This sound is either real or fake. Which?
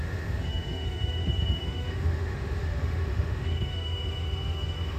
fake